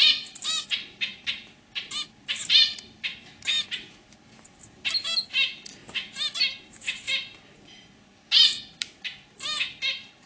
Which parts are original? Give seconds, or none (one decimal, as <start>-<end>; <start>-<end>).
0.0-10.3